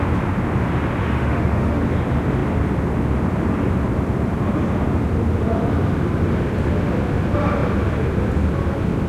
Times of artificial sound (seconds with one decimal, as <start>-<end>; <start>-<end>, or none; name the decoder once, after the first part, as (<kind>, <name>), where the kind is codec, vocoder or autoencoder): 1.0-1.8 (autoencoder, DAC-VAE)